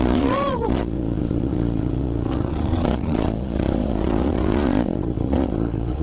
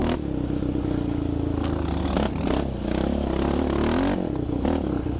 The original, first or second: second